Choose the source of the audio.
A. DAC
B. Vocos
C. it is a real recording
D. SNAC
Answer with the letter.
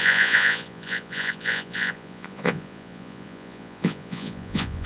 B